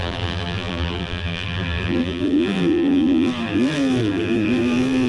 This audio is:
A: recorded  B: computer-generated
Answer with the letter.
B